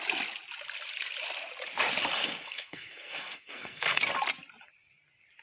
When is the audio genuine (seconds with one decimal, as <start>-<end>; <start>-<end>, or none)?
0.0-2.0; 4.0-5.4